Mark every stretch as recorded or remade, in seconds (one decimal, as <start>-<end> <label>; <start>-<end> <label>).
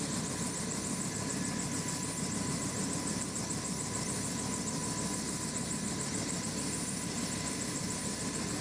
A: 0.0-8.6 recorded